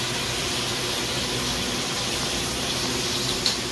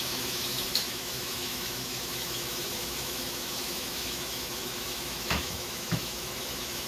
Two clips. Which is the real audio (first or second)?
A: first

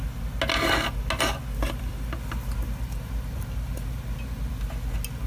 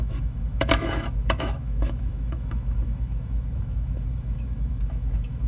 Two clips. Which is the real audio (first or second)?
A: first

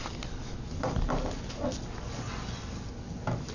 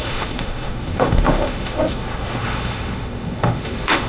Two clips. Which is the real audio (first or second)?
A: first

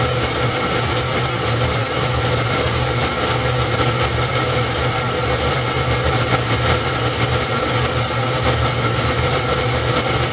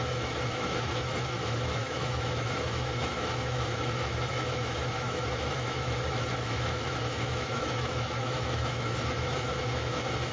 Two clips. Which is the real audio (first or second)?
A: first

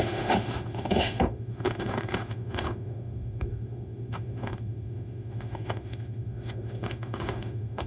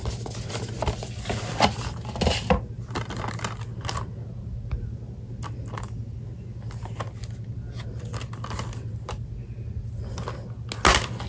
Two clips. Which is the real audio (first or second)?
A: second